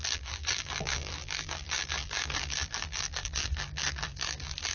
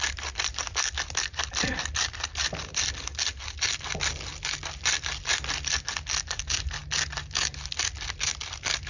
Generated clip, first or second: first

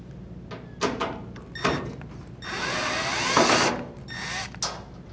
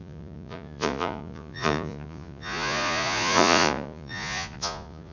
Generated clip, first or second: second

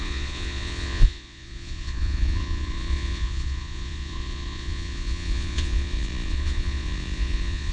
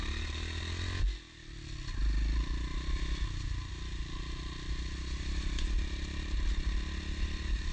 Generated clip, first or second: first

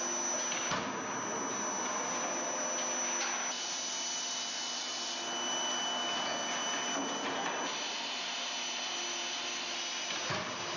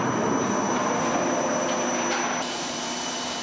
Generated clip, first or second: second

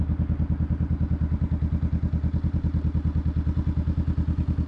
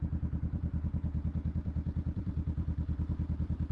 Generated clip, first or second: second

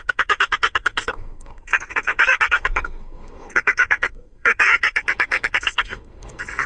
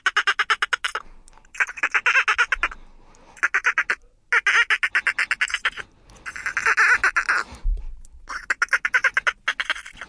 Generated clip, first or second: first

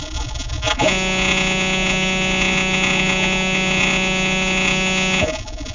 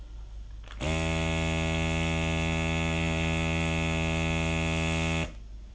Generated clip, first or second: first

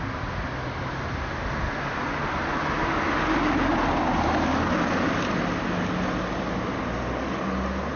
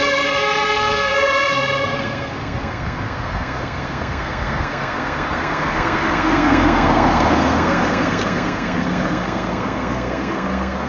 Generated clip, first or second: second